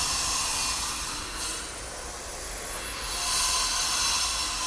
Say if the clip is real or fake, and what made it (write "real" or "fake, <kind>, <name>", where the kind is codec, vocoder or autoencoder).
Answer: real